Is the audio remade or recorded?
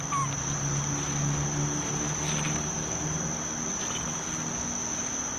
recorded